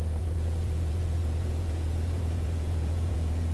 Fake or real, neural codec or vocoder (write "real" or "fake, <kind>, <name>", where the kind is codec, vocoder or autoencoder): fake, vocoder, Vocos